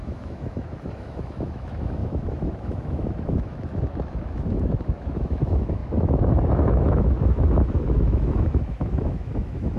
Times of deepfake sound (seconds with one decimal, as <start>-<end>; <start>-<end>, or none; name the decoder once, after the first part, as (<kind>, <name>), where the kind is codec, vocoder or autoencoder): 0.0-9.8 (autoencoder, DAC-VAE)